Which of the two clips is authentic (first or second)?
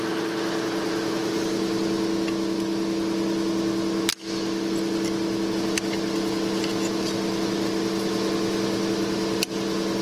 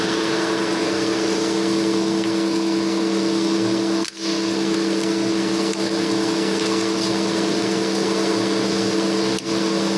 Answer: first